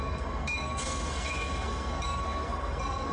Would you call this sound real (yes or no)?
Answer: no